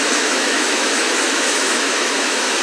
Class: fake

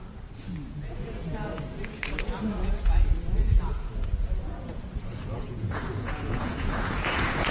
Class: fake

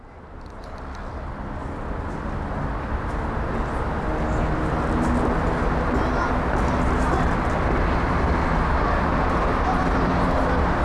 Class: real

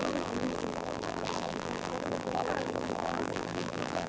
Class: fake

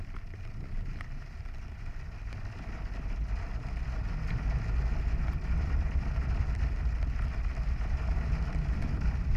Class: real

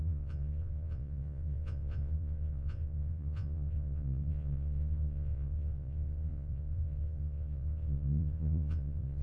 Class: fake